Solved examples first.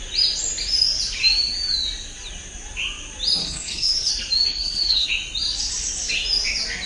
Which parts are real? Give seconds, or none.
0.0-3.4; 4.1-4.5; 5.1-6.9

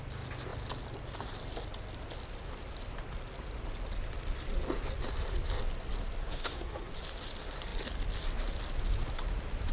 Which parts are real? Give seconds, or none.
0.0-6.2; 6.9-9.7

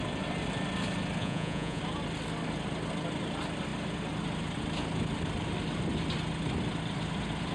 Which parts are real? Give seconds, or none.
0.0-1.2; 1.8-7.5